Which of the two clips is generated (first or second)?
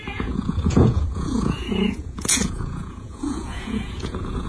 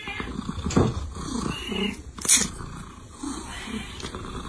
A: first